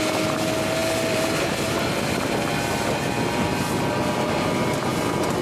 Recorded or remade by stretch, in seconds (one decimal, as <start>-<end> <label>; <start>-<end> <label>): 0.0-5.4 recorded